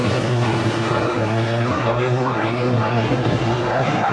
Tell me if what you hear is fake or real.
fake